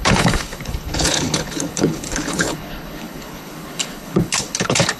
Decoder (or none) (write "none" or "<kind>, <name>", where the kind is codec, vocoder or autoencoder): codec, HILCodec